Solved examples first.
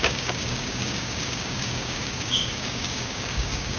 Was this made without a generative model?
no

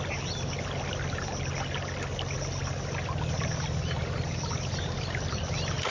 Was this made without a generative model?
yes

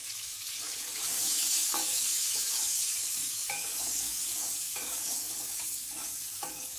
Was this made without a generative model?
no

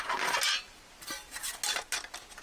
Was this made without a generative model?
yes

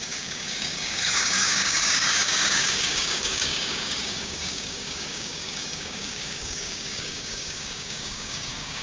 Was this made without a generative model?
no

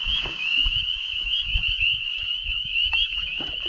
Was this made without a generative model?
no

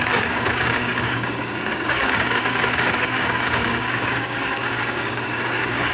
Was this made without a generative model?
no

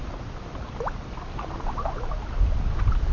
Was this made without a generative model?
yes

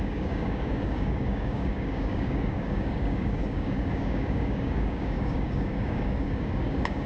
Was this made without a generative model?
no